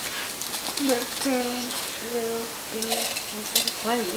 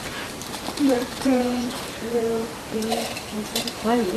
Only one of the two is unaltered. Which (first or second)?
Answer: first